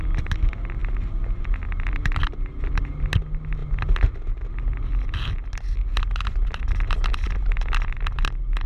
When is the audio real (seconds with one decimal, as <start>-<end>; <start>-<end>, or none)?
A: 0.0-8.7